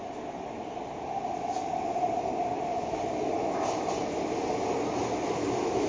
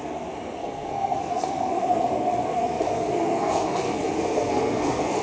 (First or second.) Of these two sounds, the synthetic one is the second